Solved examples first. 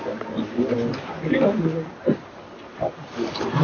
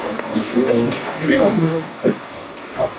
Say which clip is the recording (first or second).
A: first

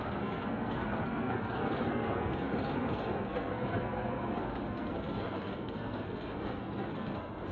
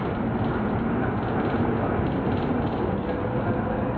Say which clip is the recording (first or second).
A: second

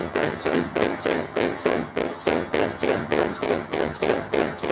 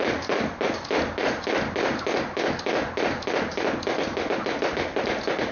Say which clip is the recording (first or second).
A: second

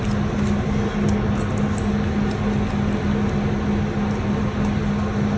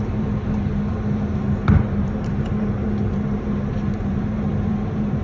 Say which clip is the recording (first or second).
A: first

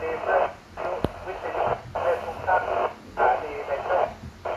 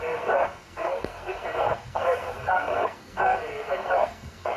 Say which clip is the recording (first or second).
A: first